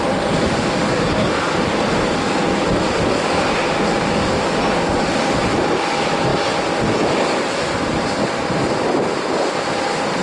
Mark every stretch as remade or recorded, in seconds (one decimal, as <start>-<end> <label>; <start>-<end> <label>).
0.0-10.2 recorded